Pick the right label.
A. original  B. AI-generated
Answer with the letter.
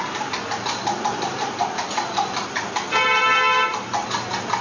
A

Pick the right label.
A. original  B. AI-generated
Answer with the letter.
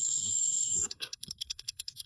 B